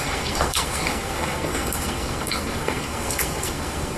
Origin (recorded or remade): remade